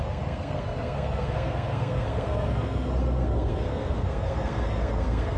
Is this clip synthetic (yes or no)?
yes